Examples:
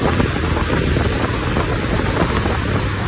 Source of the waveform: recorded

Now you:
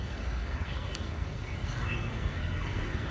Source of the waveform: remade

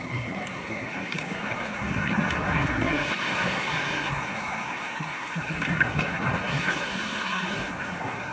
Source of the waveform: remade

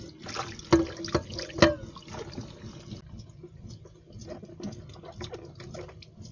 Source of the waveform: recorded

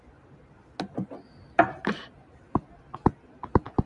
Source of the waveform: recorded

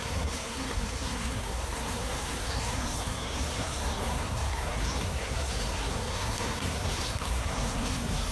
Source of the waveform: remade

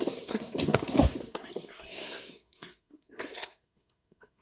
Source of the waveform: remade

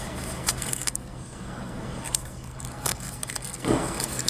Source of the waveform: remade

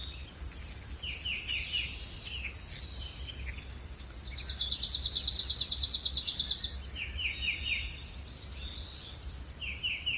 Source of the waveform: recorded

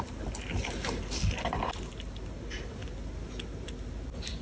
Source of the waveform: recorded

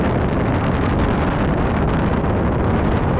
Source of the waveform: recorded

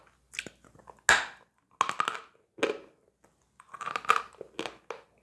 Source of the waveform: recorded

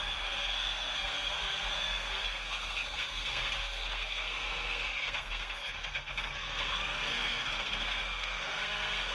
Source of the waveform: remade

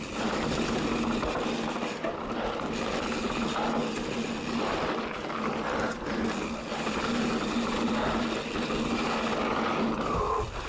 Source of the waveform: recorded